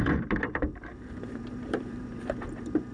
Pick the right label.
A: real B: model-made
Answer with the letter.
B